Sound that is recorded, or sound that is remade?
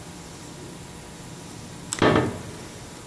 recorded